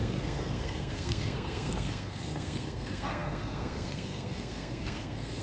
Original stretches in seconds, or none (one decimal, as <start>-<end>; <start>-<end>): none